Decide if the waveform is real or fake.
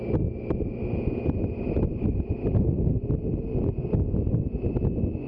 real